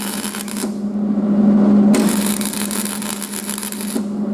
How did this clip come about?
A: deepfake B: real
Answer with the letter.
B